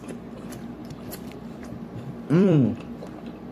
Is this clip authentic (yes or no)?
no